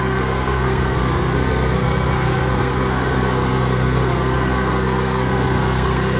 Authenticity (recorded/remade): remade